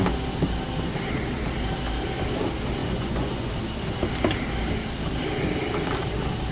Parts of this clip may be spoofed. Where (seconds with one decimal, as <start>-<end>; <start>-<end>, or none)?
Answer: 2.8-3.5